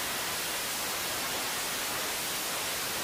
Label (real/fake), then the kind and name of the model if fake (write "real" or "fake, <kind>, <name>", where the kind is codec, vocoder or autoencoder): real